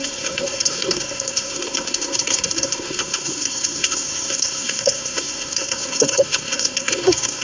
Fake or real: fake